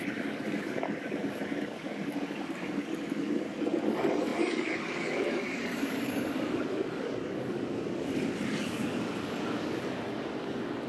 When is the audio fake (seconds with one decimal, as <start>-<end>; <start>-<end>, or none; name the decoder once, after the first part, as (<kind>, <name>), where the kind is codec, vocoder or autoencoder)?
0.0-10.9 (codec, DAC)